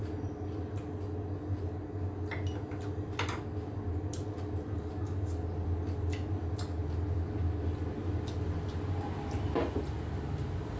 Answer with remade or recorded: recorded